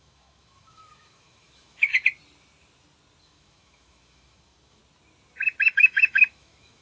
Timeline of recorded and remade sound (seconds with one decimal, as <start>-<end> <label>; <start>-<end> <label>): 0.0-1.9 remade; 1.9-3.2 recorded; 3.2-4.8 remade; 4.8-5.7 recorded; 5.7-6.8 remade

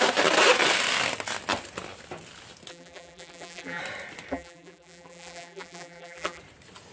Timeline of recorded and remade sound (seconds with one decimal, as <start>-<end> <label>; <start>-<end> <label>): 0.0-2.7 recorded; 2.7-3.8 remade; 3.8-4.3 recorded; 4.3-6.4 remade; 6.4-6.9 recorded

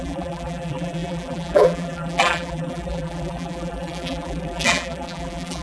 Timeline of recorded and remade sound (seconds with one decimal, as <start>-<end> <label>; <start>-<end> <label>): 0.0-5.6 remade

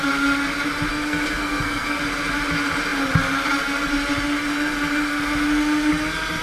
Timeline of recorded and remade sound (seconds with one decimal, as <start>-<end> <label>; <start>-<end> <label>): 0.0-0.9 recorded; 0.9-2.0 remade; 2.0-6.4 recorded

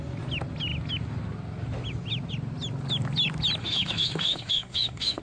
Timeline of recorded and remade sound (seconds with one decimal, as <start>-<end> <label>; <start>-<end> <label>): 0.0-3.6 recorded; 3.6-5.2 remade

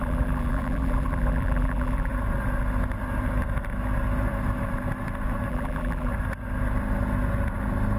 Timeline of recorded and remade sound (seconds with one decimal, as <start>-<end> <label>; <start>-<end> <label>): 0.0-2.1 remade; 2.1-5.5 recorded; 5.5-6.1 remade; 6.1-8.0 recorded

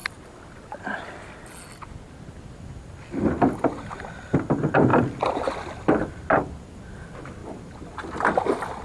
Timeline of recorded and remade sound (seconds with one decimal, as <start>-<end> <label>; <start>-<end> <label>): 0.0-8.8 recorded

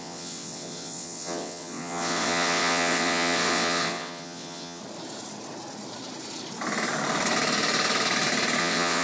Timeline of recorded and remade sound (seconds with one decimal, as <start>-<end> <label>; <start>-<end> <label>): 0.0-4.8 remade; 4.8-8.6 recorded; 8.6-9.0 remade